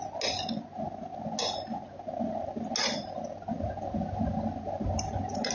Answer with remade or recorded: recorded